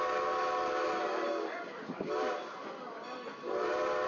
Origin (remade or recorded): recorded